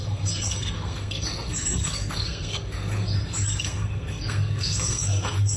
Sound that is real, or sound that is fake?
fake